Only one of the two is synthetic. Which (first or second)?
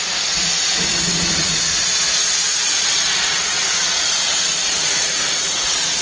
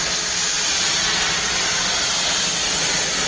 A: first